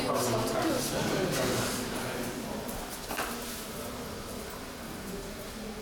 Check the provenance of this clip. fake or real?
real